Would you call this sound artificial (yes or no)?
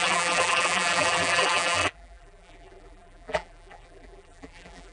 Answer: yes